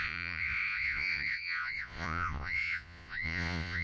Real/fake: fake